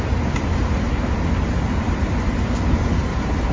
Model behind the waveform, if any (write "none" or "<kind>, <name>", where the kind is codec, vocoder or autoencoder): none